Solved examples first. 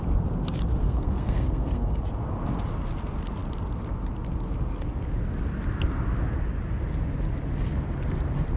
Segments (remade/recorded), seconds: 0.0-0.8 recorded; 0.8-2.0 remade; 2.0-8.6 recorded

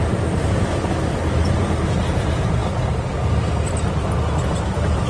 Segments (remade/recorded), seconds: 0.0-2.6 remade; 2.6-4.4 recorded; 4.4-5.1 remade

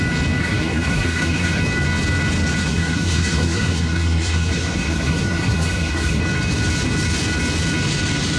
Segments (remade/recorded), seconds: 0.0-0.4 recorded; 0.4-1.6 remade; 1.6-2.6 recorded; 2.6-6.2 remade; 6.2-8.4 recorded

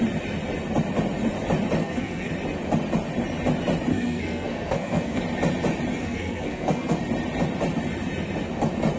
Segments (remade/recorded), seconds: 0.0-1.8 recorded; 1.8-2.3 remade; 2.3-3.9 recorded; 3.9-5.2 remade; 5.2-6.0 recorded; 6.0-7.0 remade; 7.0-9.0 recorded

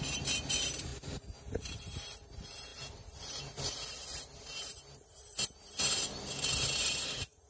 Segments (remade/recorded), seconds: 0.0-7.5 recorded

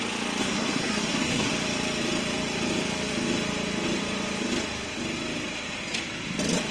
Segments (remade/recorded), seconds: 0.0-0.4 recorded; 0.4-1.5 remade; 1.5-6.7 recorded